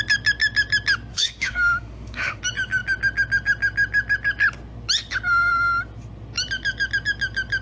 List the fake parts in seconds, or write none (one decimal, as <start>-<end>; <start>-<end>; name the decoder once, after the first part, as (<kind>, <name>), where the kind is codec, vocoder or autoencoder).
1.1-2.4 (autoencoder, DAC-VAE)